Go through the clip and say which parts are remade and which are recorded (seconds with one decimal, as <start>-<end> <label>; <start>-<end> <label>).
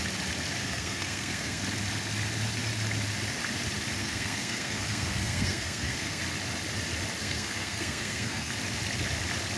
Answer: 0.0-0.6 recorded; 0.6-1.6 remade; 1.6-4.0 recorded; 4.0-6.2 remade; 6.2-7.2 recorded; 7.2-8.5 remade; 8.5-9.6 recorded